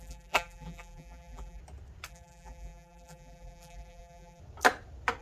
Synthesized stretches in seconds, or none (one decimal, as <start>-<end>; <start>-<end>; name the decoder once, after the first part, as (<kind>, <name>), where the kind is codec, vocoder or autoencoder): 0.0-1.6 (vocoder, BigVGAN v2); 2.1-4.4